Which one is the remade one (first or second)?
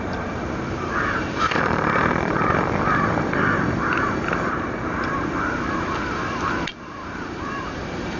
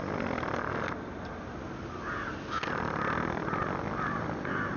first